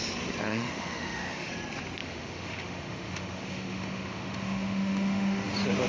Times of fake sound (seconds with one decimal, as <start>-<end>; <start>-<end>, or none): 0.5-1.5; 2.0-5.5